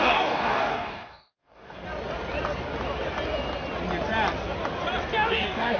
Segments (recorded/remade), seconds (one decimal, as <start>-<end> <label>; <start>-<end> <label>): 0.0-1.8 remade; 1.8-5.3 recorded; 5.3-5.8 remade

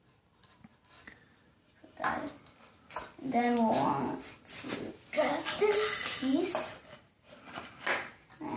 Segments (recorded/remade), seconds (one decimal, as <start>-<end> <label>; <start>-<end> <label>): 0.0-8.6 recorded

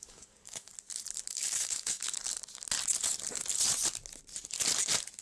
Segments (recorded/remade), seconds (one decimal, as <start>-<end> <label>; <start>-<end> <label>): 0.0-0.7 remade; 0.7-1.3 recorded; 1.3-2.0 remade; 2.0-5.2 recorded

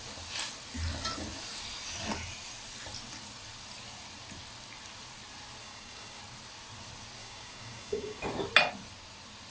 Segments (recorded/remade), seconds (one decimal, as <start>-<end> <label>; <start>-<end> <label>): 0.0-5.6 recorded; 5.6-6.2 remade; 6.2-7.2 recorded; 7.2-8.2 remade; 8.2-9.5 recorded

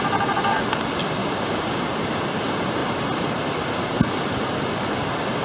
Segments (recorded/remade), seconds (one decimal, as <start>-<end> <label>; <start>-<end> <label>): 0.0-1.2 recorded; 1.2-1.8 remade; 1.8-5.4 recorded

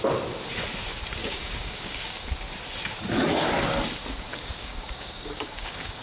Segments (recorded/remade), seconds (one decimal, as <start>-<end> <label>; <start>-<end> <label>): 0.0-1.2 recorded; 1.2-2.3 remade; 2.3-4.3 recorded; 4.3-6.0 remade

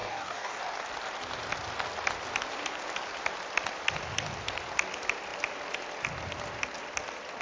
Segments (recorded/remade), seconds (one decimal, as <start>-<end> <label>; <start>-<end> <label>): 0.0-0.6 remade; 0.6-7.4 recorded